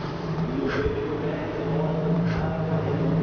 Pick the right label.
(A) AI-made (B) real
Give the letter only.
A